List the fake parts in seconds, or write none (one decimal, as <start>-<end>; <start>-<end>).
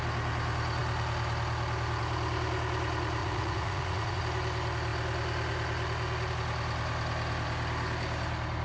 3.2-4.2